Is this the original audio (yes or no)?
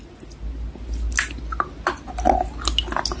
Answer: yes